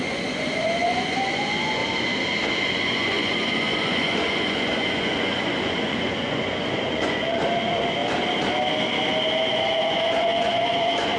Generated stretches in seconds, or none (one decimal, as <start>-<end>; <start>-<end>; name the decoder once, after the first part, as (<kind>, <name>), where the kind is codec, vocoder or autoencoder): 0.0-1.8 (vocoder, Vocos); 2.6-8.0; 9.5-11.2